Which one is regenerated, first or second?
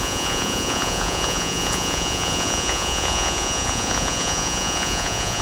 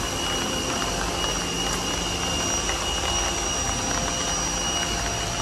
first